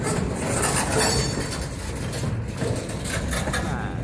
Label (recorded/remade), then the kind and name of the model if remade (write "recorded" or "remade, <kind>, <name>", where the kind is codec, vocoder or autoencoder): recorded